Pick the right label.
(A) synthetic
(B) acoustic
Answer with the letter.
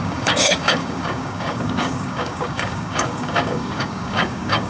A